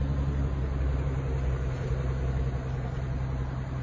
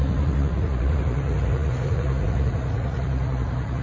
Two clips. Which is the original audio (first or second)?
first